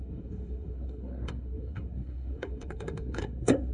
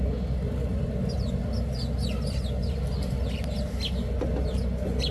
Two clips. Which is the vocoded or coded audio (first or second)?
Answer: first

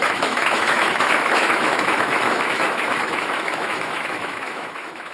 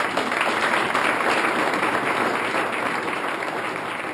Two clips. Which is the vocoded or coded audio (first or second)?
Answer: first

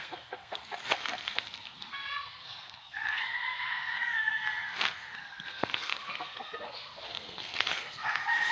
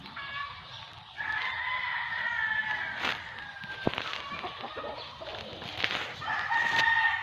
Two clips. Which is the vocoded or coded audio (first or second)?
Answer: first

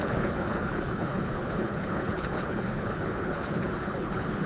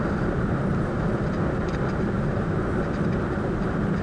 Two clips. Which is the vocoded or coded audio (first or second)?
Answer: first